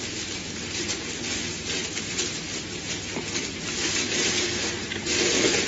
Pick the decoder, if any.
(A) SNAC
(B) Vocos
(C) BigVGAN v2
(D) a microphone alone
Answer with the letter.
D